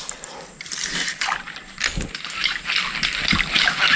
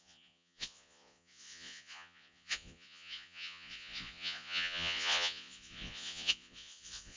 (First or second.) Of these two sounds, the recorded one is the first